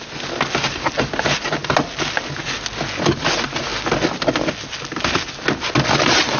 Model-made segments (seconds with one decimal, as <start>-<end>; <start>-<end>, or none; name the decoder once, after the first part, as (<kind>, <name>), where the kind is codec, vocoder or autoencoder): none